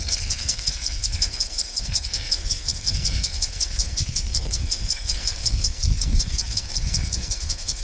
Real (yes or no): no